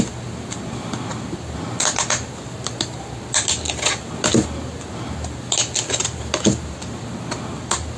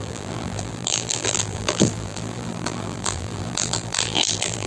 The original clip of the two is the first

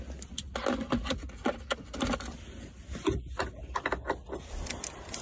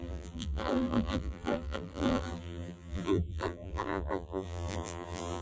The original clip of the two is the first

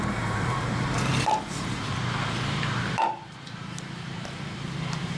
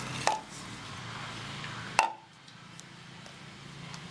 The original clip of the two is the second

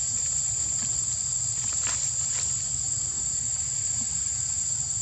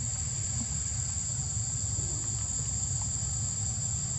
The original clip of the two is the second